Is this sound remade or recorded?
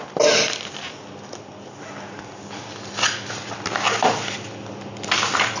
recorded